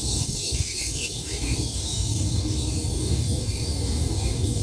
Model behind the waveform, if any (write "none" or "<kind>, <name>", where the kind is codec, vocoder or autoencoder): codec, DAC